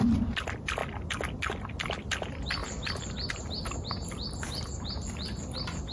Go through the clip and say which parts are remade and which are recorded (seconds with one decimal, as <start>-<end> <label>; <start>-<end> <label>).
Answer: 0.0-5.9 recorded